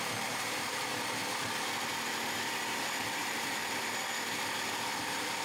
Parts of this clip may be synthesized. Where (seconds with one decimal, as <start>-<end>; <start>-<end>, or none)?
0.0-0.9; 3.2-3.6; 4.9-5.4